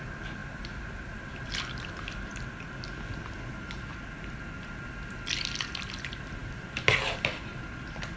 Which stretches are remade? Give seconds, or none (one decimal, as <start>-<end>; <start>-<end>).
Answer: 0.0-2.3; 5.1-8.2